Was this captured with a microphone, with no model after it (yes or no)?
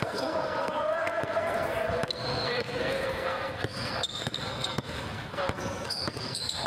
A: no